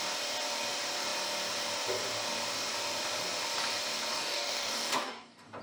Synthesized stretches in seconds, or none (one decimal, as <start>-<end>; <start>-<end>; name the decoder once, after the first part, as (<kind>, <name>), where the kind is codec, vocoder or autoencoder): 4.1-5.6 (codec, DAC)

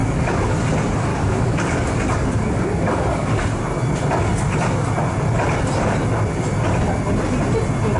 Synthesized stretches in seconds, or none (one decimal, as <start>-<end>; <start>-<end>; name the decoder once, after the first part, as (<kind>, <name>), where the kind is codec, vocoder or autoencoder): 0.0-0.6 (codec, DAC); 1.1-3.4